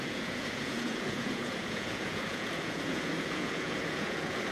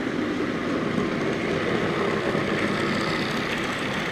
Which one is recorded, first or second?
second